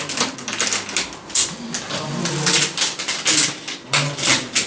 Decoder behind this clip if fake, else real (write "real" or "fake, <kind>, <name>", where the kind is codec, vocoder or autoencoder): real